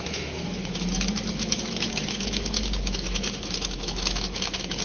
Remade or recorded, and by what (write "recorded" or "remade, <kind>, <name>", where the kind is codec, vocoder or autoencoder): remade, autoencoder, DAC-VAE